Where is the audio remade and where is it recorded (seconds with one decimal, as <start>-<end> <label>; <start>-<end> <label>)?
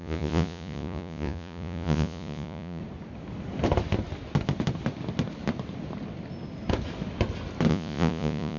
0.0-2.8 remade; 2.8-7.7 recorded; 7.7-8.6 remade